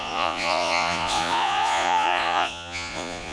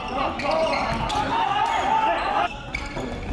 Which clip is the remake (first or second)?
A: first